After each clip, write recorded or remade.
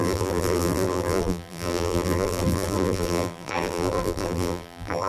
remade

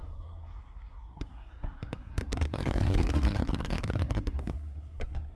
remade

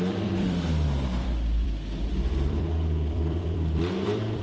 remade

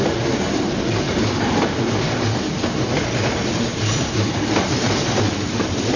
recorded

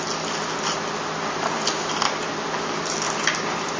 recorded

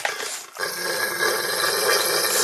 recorded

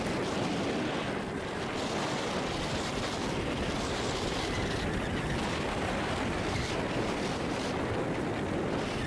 recorded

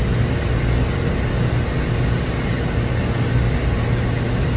recorded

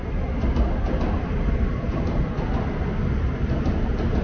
recorded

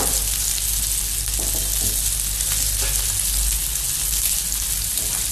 recorded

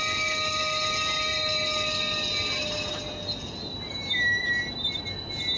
recorded